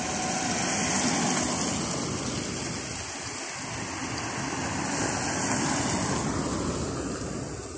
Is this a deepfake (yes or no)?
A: no